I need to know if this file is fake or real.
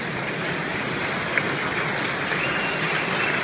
real